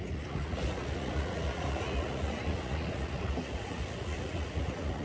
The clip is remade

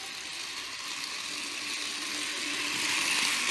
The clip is recorded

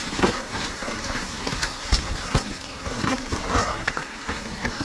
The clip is remade